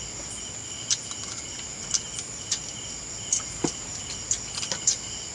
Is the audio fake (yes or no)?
no